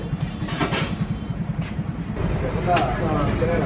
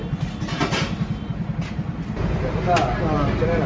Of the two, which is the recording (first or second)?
second